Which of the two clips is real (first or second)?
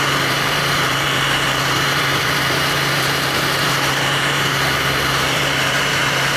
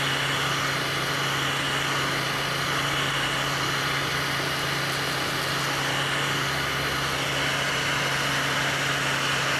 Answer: second